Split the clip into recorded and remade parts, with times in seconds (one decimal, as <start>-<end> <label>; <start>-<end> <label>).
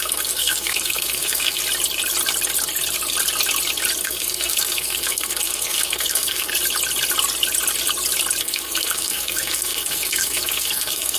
0.0-1.6 remade; 1.6-4.0 recorded; 4.0-6.5 remade; 6.5-8.4 recorded; 8.4-11.2 remade